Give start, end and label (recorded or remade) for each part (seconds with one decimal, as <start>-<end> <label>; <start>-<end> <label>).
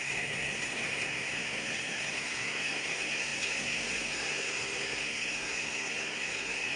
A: 0.0-6.8 remade